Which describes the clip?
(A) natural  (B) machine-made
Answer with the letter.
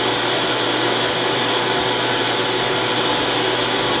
A